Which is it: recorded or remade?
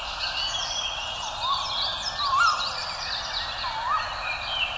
recorded